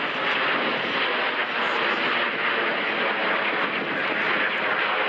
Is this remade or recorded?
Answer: recorded